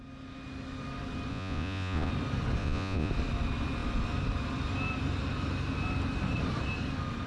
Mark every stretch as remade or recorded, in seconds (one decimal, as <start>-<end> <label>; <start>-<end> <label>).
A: 0.0-1.3 recorded; 1.3-2.1 remade; 2.1-2.6 recorded; 2.6-3.1 remade; 3.1-7.3 recorded